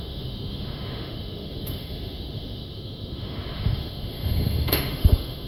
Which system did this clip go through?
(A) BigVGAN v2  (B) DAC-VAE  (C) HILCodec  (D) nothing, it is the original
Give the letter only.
B